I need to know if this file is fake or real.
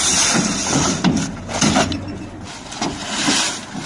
real